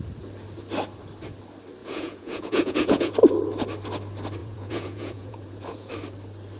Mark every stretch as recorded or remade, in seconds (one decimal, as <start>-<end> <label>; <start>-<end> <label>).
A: 0.0-1.8 recorded; 1.8-3.1 remade; 3.1-4.4 recorded; 4.4-5.9 remade; 5.9-6.6 recorded